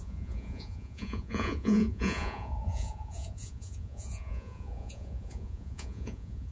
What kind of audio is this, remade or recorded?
remade